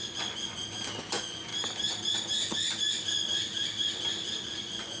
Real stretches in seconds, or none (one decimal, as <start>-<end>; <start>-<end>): 0.6-1.1; 1.5-4.4